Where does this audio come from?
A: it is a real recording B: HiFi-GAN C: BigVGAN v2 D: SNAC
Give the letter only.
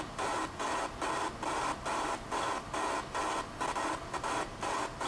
A